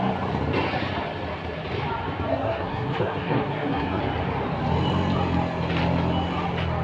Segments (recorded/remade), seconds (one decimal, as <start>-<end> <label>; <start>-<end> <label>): 0.0-2.3 recorded; 2.3-4.0 remade; 4.0-6.8 recorded